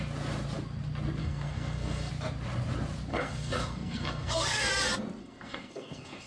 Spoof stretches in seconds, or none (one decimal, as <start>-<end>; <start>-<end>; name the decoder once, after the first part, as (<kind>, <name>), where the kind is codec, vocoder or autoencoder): 1.2-2.1 (codec, SNAC); 3.1-4.7; 5.2-6.3

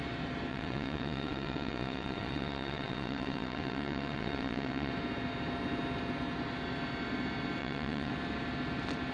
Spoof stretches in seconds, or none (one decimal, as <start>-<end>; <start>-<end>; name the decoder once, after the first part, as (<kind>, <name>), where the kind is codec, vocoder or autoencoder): 0.5-4.9 (vocoder, WaveNeXt); 7.6-8.1